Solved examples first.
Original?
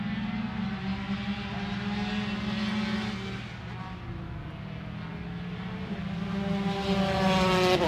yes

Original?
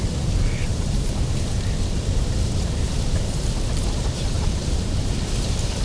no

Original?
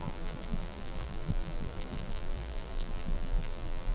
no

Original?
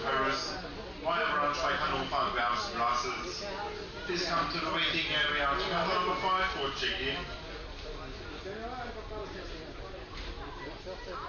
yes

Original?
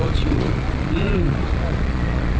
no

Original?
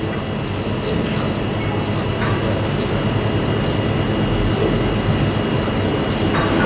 yes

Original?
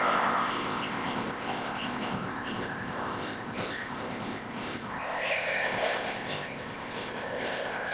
no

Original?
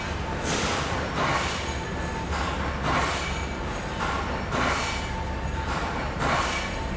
yes